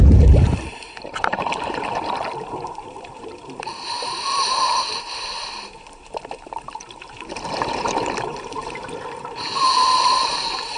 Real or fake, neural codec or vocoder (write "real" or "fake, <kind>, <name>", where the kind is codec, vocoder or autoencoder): fake, vocoder, BigVGAN v2